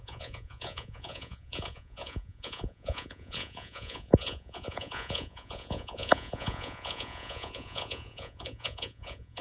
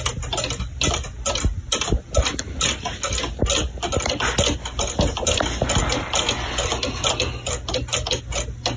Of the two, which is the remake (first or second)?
first